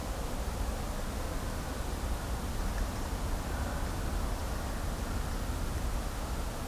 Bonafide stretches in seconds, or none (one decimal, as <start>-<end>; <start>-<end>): 0.0-6.7